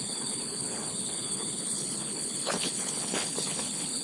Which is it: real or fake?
fake